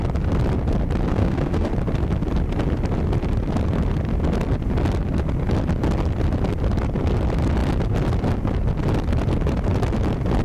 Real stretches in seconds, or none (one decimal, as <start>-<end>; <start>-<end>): 0.0-1.1; 1.7-10.4